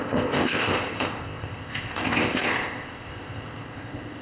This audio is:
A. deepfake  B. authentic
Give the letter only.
A